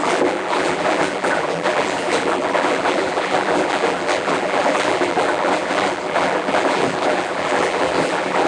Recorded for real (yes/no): no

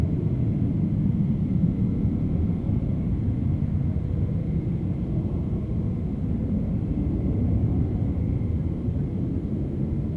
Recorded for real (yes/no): yes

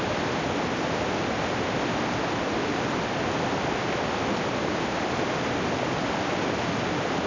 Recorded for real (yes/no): yes